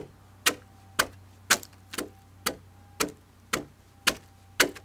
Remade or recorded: recorded